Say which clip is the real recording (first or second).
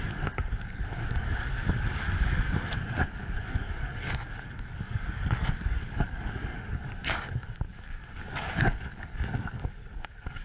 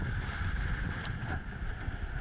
second